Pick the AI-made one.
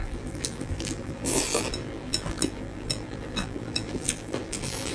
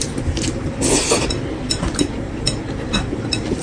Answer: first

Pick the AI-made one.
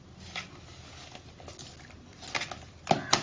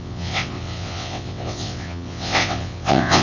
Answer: second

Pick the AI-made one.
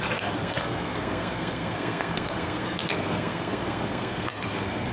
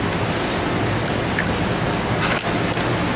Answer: first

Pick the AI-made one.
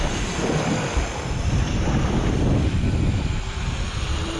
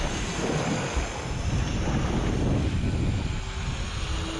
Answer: first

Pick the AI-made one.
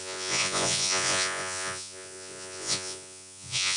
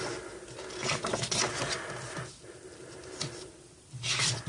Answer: first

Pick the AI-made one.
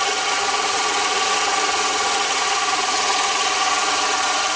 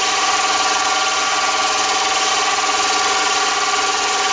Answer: first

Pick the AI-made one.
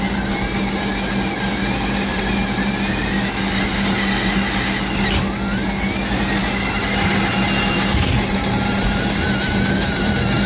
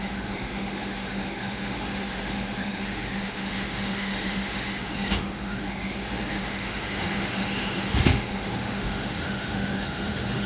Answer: second